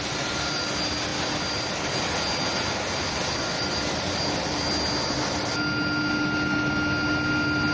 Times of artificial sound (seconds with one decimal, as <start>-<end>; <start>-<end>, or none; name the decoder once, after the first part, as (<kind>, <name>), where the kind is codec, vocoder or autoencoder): none